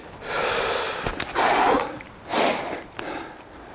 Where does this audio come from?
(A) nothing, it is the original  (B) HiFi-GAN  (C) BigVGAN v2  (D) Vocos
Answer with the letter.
A